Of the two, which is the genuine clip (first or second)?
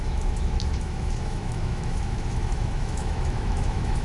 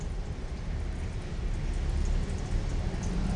second